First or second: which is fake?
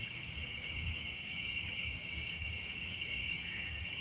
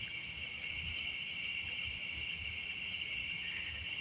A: first